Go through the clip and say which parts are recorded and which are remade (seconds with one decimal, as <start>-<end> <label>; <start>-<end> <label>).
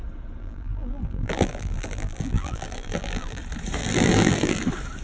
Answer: 0.0-0.4 recorded; 0.4-3.4 remade; 3.4-3.8 recorded; 3.8-4.6 remade; 4.6-5.0 recorded